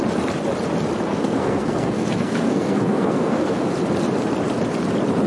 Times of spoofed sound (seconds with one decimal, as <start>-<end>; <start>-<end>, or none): 1.1-3.7